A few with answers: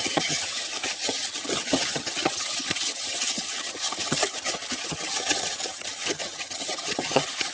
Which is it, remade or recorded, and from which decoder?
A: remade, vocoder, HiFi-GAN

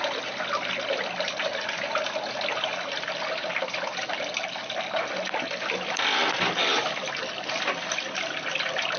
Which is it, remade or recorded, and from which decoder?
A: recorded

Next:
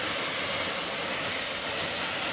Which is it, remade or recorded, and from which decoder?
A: recorded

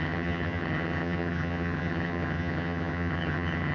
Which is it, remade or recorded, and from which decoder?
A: remade, vocoder, HiFi-GAN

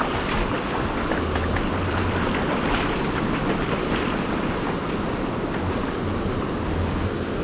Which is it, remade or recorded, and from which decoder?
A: recorded